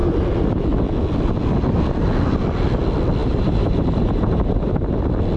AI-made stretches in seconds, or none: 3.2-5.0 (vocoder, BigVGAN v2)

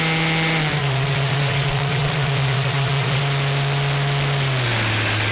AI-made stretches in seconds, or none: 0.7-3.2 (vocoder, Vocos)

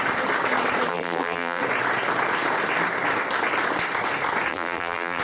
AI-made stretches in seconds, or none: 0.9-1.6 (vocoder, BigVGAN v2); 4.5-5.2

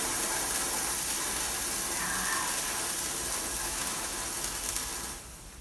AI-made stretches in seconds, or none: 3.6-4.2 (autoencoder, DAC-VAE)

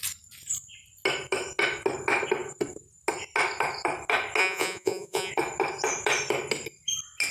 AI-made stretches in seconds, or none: 4.4-5.3 (vocoder, Vocos)

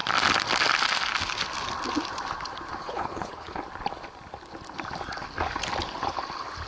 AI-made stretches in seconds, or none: 2.8-3.6 (codec, HILCodec)

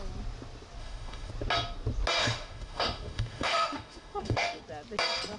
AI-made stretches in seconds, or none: 0.8-1.3 (autoencoder, DAC-VAE); 2.2-4.6